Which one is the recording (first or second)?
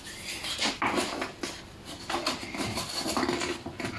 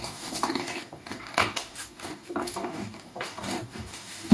first